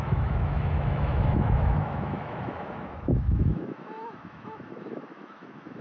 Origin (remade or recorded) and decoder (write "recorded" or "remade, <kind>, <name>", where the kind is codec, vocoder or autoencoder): remade, autoencoder, DAC-VAE